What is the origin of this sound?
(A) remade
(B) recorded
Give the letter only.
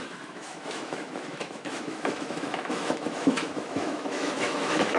A